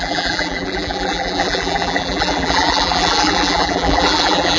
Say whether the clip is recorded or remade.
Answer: remade